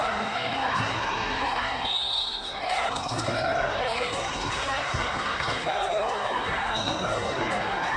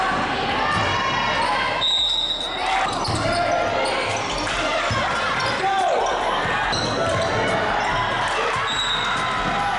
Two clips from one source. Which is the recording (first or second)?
second